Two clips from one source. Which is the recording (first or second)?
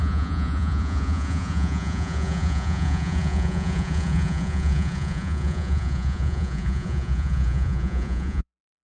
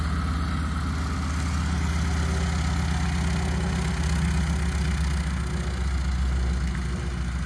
second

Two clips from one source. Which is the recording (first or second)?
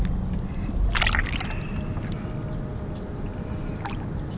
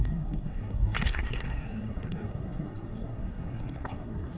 first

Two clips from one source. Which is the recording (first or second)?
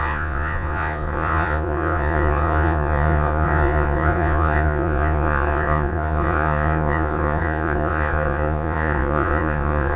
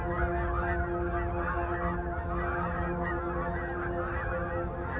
second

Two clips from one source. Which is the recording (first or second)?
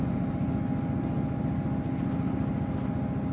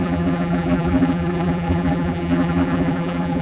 first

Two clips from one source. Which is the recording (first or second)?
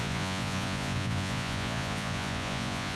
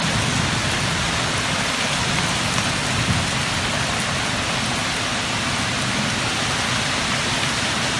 second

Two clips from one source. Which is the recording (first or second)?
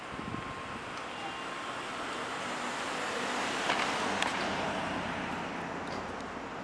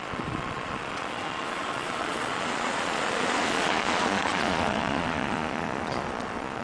first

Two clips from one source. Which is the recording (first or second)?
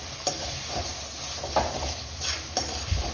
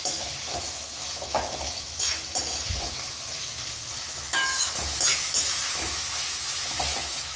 first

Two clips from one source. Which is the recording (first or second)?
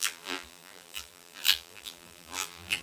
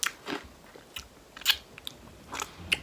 second